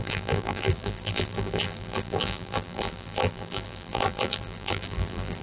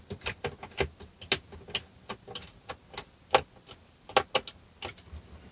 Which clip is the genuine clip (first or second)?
second